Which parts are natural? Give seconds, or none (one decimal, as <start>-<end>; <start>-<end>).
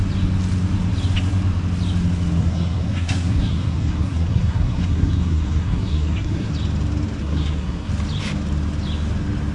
0.0-2.4; 6.5-7.2; 7.9-9.5